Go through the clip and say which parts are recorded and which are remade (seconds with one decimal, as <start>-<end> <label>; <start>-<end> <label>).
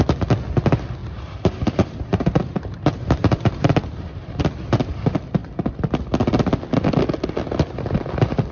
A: 0.0-1.0 recorded; 1.0-4.4 remade; 4.4-8.5 recorded